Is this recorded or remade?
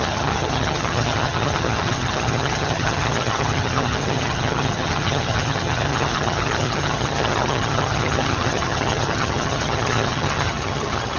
remade